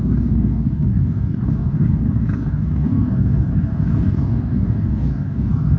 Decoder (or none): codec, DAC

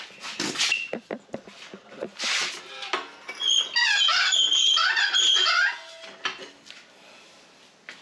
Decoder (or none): none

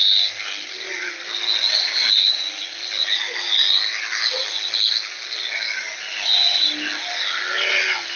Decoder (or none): none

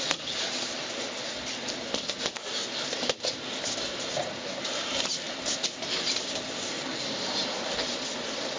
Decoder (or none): none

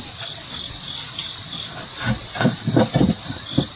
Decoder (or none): none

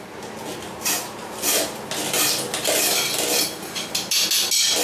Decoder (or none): none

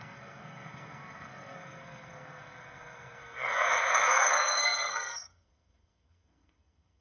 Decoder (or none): codec, SNAC